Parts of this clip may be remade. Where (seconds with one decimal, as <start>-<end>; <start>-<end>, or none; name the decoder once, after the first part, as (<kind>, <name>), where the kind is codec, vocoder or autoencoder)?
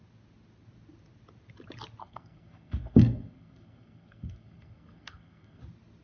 2.0-5.6 (codec, SNAC)